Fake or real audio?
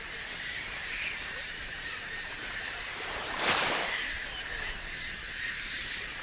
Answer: fake